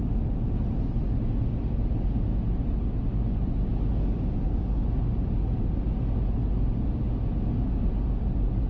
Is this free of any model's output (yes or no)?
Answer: yes